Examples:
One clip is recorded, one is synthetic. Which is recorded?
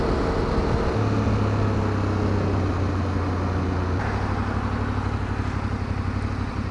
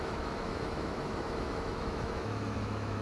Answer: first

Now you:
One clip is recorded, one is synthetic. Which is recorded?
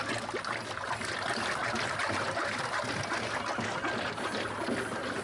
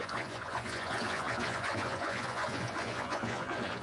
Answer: first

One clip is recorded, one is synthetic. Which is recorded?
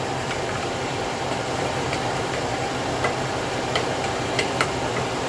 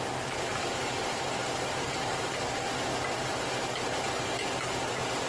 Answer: second